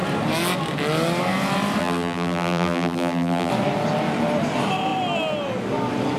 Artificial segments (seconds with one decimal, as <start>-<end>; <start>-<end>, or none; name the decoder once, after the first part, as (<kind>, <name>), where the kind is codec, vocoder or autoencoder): 1.8-3.5 (vocoder, BigVGAN v2)